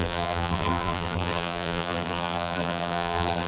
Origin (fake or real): fake